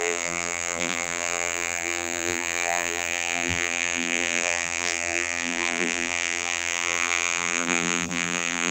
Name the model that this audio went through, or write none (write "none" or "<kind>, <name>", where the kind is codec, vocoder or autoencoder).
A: vocoder, BigVGAN v2